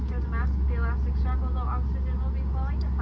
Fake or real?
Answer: real